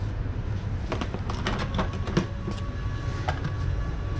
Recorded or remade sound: recorded